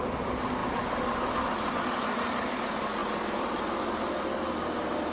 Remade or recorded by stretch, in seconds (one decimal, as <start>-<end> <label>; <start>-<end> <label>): 0.0-3.0 recorded; 3.0-3.6 remade; 3.6-5.1 recorded